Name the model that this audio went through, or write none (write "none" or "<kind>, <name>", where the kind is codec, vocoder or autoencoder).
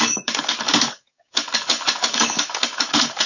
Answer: codec, DAC